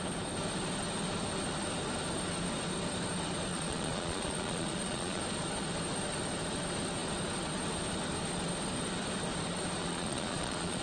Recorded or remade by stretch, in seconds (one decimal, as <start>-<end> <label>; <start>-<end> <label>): 0.0-3.5 recorded; 3.5-5.2 remade; 5.2-9.8 recorded; 9.8-10.8 remade